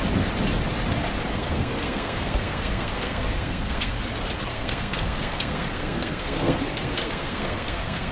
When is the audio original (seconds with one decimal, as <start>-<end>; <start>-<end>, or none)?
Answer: 0.0-1.3; 4.0-4.5